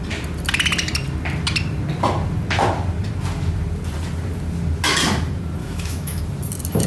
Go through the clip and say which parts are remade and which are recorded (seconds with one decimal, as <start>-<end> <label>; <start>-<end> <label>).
0.0-5.6 recorded; 5.6-6.2 remade; 6.2-6.9 recorded